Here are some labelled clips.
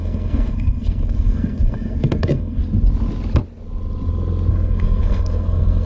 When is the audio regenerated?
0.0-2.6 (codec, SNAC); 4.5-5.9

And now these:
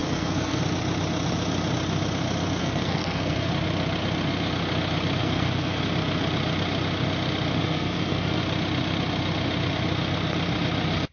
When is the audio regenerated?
0.0-0.6 (codec, SNAC); 2.6-3.5; 5.2-5.8; 7.6-8.4

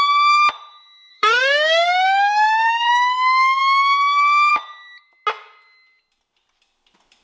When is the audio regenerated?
1.1-2.9 (codec, SNAC)

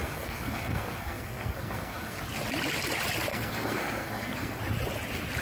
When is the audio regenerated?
0.0-2.2 (codec, SNAC); 3.3-4.6

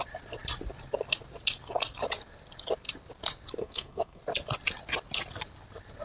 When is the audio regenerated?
3.6-4.2 (codec, SNAC)